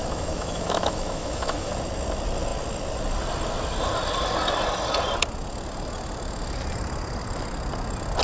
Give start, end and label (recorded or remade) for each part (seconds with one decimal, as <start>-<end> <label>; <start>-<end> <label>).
0.0-1.7 remade; 1.7-8.2 recorded